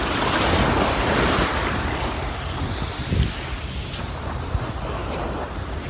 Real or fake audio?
real